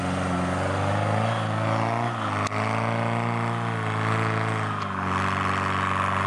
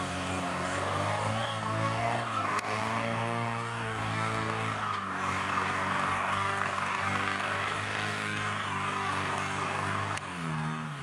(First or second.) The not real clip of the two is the second